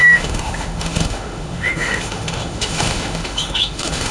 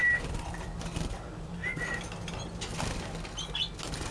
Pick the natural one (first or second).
second